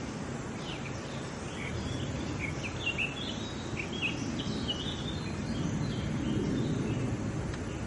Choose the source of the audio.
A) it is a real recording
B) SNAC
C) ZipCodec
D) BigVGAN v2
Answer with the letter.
A